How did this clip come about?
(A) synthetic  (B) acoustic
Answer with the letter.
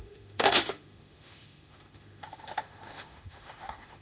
A